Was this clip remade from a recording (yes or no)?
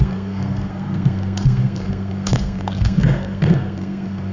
yes